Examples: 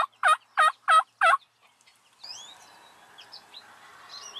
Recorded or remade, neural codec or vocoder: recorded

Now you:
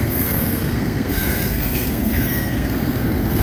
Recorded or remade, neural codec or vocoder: remade, codec, SNAC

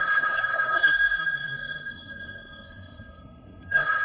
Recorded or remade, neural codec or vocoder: remade, codec, SNAC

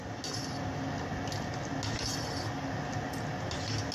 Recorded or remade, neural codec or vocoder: recorded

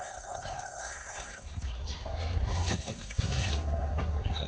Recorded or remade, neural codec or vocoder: remade, codec, SNAC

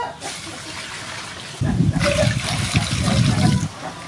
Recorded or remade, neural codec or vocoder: recorded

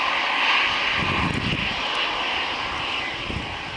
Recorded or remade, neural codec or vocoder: recorded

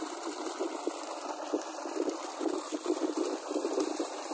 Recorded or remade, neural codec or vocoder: remade, vocoder, BigVGAN v2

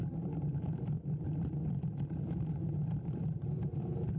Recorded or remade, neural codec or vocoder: recorded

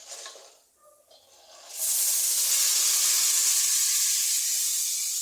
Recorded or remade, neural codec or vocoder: recorded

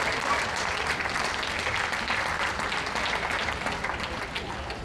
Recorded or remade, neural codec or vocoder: recorded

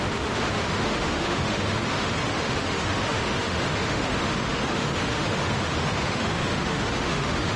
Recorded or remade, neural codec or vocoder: remade, autoencoder, DAC-VAE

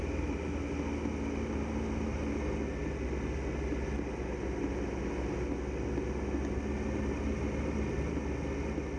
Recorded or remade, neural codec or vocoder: recorded